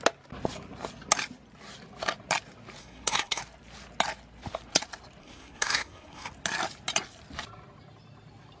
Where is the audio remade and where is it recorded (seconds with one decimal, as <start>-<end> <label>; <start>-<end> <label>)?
0.0-2.8 recorded; 2.8-3.4 remade; 3.4-5.2 recorded; 5.2-6.3 remade; 6.3-8.6 recorded